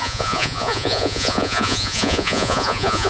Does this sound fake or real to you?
fake